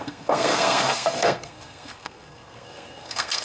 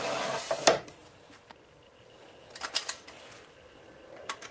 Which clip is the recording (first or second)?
second